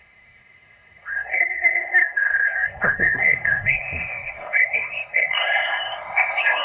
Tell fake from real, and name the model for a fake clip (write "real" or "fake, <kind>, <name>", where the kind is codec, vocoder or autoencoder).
fake, codec, SNAC